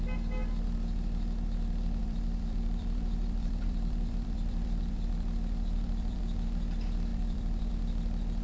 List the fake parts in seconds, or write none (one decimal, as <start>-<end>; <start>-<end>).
2.0-6.2; 7.1-7.7